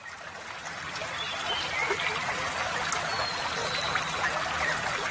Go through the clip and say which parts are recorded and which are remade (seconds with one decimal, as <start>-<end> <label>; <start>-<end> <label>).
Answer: 0.0-0.7 recorded; 0.7-1.2 remade; 1.2-3.6 recorded; 3.6-4.3 remade; 4.3-5.1 recorded